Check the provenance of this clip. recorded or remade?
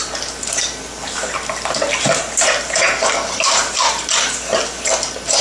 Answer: recorded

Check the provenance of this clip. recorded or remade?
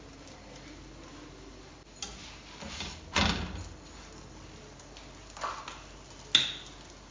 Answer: recorded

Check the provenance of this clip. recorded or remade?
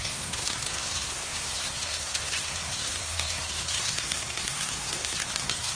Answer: remade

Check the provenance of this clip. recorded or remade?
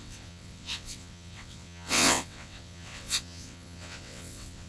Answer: remade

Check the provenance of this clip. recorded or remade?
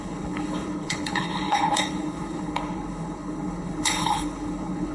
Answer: remade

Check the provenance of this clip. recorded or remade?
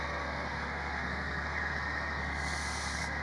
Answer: remade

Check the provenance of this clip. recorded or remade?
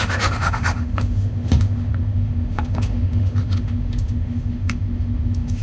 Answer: remade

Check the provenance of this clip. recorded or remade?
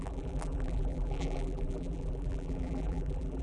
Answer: remade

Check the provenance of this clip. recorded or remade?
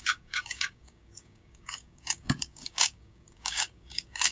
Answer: remade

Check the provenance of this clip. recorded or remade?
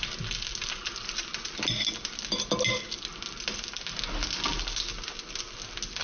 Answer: recorded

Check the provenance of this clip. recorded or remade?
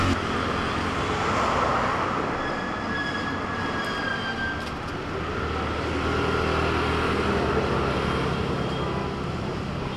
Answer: recorded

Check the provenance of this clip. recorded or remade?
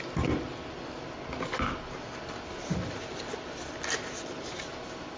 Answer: recorded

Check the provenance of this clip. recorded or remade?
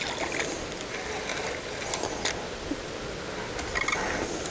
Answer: recorded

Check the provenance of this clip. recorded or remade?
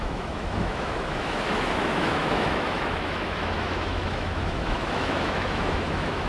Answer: remade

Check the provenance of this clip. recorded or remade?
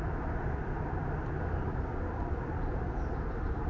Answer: recorded